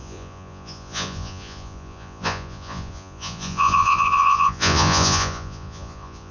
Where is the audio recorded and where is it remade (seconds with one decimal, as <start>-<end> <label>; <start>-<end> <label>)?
0.0-6.3 remade